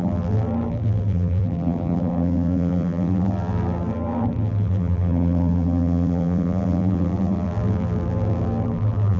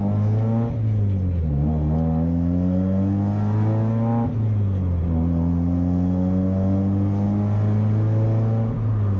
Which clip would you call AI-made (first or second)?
first